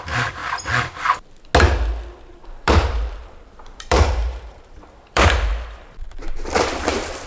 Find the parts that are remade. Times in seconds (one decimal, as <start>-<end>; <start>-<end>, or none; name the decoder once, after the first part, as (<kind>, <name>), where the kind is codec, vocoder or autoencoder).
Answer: 0.0-0.4 (vocoder, BigVGAN v2); 2.3-7.3